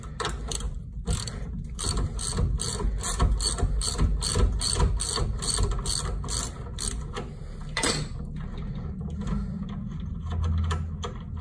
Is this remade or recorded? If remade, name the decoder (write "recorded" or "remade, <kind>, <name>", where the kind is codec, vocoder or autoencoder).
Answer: recorded